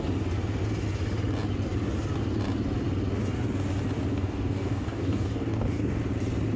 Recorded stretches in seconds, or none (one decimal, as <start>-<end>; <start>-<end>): 0.0-4.1; 6.0-6.6